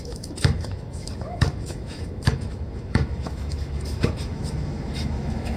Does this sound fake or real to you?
fake